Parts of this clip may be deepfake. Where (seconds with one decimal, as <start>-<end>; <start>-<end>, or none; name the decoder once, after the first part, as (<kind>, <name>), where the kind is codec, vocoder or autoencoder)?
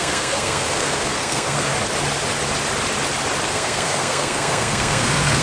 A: 0.0-1.7 (codec, SNAC); 3.5-5.4